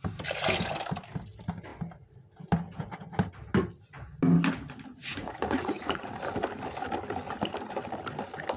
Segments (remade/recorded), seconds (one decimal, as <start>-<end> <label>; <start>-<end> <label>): 0.0-4.9 recorded; 4.9-6.1 remade; 6.1-8.6 recorded